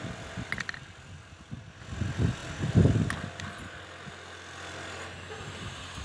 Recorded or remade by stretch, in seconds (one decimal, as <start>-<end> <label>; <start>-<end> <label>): 0.0-6.0 recorded